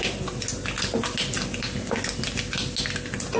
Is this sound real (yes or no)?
yes